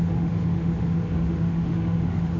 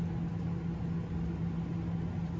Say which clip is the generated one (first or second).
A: first